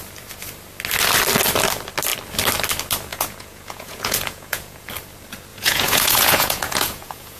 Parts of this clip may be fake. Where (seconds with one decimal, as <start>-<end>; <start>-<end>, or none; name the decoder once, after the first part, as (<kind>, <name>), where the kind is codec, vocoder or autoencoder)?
3.1-4.9 (vocoder, Vocos); 5.5-7.4